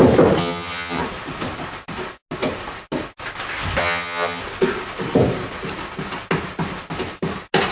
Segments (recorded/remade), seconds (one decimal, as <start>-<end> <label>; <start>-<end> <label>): 0.0-0.4 recorded; 0.4-1.0 remade; 1.0-3.8 recorded; 3.8-4.4 remade; 4.4-7.7 recorded